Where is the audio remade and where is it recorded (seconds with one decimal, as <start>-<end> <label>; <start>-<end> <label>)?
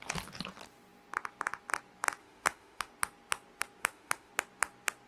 0.0-2.2 recorded; 2.2-2.9 remade; 2.9-3.8 recorded; 3.8-4.3 remade; 4.3-5.1 recorded